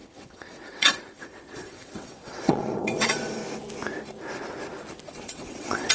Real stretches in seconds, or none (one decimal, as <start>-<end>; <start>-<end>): 3.4-5.2